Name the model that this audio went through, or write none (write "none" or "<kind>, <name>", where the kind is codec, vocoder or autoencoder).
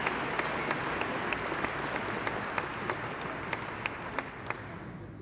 none